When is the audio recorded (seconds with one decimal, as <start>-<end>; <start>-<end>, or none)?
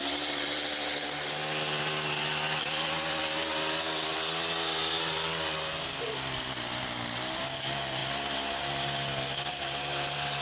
0.0-10.4